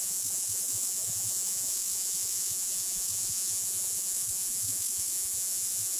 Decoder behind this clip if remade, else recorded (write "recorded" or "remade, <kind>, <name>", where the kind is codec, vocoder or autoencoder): remade, vocoder, Vocos